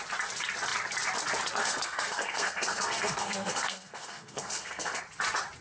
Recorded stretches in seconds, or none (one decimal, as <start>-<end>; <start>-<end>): 0.0-1.6; 5.0-5.6